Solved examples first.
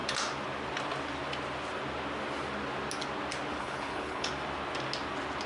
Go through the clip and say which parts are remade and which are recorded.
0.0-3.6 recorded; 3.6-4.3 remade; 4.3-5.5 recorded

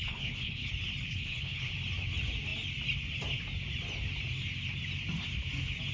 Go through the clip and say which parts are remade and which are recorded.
0.0-0.7 remade; 0.7-1.1 recorded; 1.1-1.7 remade; 1.7-5.9 recorded

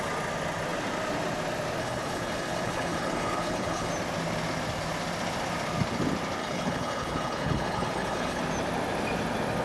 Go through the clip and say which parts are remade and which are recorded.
0.0-1.8 recorded; 1.8-3.9 remade; 3.9-6.4 recorded; 6.4-8.4 remade; 8.4-9.6 recorded

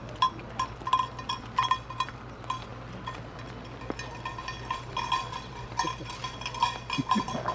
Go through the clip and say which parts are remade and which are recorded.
0.0-7.5 recorded

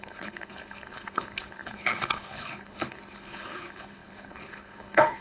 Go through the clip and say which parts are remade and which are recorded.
0.0-5.2 remade

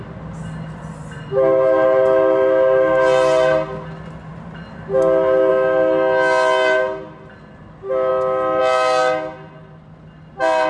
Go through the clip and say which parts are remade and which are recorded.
0.0-10.7 recorded

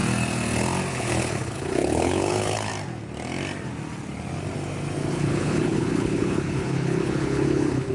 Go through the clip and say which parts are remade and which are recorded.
0.0-0.9 recorded; 0.9-2.7 remade; 2.7-5.1 recorded; 5.1-7.9 remade